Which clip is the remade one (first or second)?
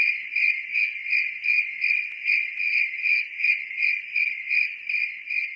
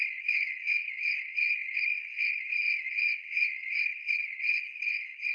second